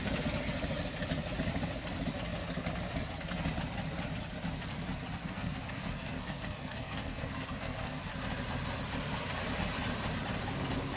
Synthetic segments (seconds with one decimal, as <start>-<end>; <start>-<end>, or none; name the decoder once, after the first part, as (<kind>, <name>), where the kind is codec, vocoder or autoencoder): 5.2-8.1 (codec, SNAC)